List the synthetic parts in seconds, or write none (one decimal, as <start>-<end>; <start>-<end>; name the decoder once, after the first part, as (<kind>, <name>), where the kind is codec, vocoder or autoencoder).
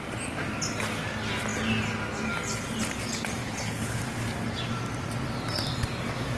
3.4-4.0 (codec, HILCodec)